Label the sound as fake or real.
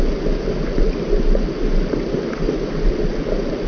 real